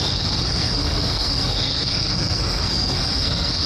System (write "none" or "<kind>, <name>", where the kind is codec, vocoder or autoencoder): codec, SNAC